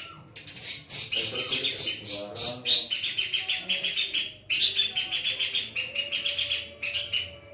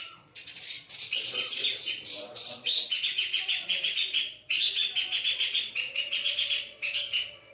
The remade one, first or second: second